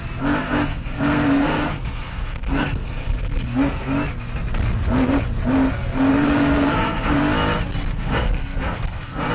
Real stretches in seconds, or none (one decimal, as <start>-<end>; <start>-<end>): 0.0-0.4; 3.9-6.1; 7.2-7.9